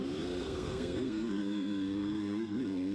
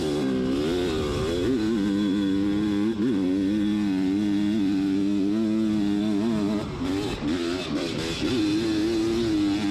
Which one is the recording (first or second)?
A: second